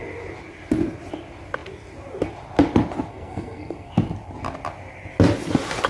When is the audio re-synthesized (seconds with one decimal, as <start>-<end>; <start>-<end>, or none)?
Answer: 3.1-3.9